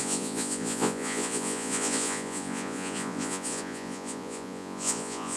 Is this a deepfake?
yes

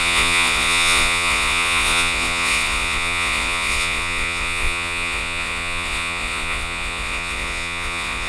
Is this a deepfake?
yes